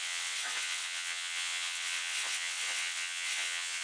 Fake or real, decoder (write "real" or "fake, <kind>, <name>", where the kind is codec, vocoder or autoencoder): fake, vocoder, WaveNeXt